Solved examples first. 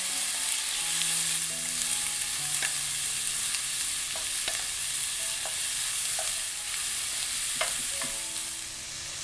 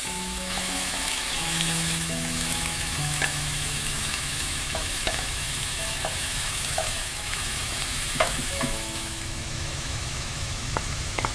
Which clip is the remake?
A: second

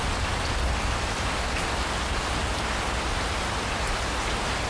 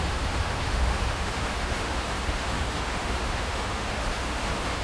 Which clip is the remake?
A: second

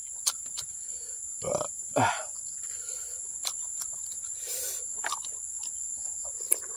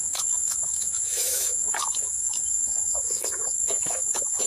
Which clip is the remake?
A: second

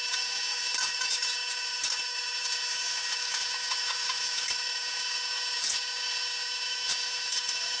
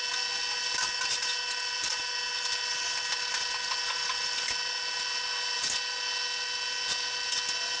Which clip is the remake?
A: first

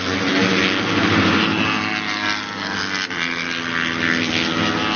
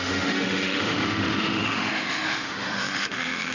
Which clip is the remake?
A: second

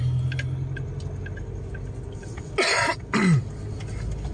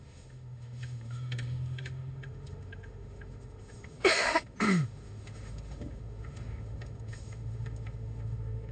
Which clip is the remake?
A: second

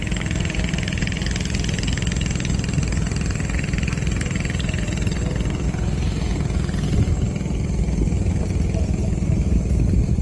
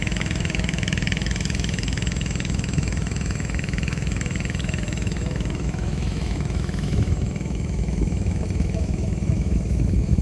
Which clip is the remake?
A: second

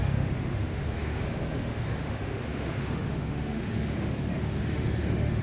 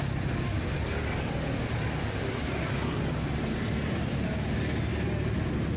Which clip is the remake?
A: first